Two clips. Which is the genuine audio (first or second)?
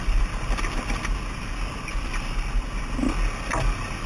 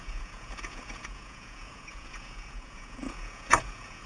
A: first